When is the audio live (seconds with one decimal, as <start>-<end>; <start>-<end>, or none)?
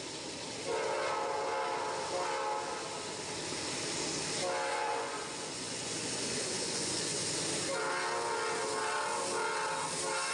0.0-4.7; 7.3-10.3